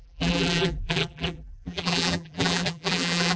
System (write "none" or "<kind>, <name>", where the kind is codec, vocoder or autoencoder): vocoder, BigVGAN v2